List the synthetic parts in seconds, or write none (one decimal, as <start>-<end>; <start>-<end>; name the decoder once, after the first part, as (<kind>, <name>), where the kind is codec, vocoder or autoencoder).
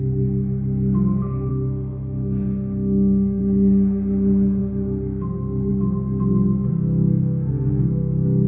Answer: 1.5-3.4 (codec, SNAC); 6.7-8.5